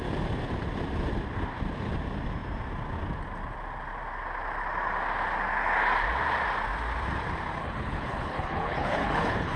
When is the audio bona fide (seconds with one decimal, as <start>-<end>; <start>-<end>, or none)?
0.0-7.6